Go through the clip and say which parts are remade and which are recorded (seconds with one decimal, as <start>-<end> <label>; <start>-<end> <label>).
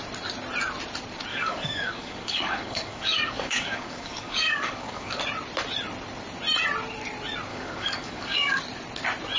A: 0.0-1.3 recorded; 1.3-5.2 remade; 5.2-7.5 recorded; 7.5-8.6 remade; 8.6-9.4 recorded